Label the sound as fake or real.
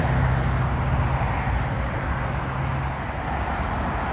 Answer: real